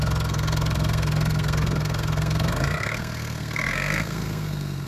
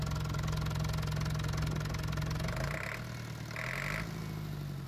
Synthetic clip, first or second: first